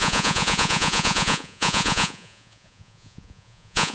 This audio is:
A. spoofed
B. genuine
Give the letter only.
A